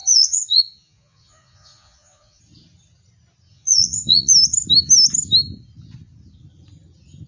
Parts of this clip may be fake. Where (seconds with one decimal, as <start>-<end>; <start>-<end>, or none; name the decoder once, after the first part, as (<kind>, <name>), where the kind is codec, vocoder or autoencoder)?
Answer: 0.0-2.4 (vocoder, Vocos); 3.5-4.3